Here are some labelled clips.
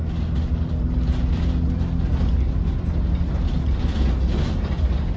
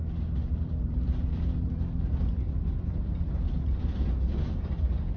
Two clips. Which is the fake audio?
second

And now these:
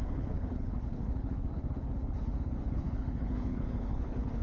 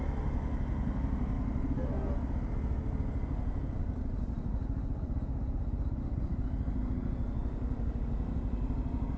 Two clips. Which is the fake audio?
first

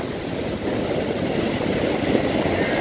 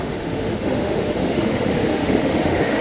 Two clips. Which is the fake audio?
second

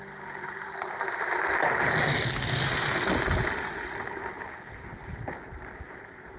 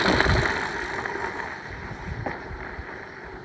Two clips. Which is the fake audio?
second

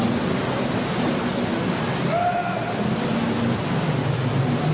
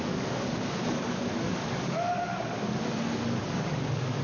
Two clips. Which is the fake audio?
second